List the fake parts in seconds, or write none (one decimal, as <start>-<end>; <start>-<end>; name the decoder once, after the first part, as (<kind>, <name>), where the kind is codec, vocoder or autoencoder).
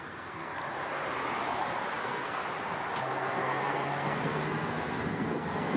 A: 0.0-0.6 (codec, SNAC); 2.0-2.4; 3.0-5.8